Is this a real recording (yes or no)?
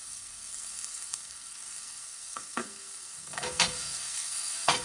no